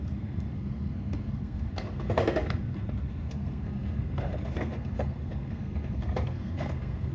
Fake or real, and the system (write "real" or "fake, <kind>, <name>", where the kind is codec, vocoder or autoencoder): fake, codec, SNAC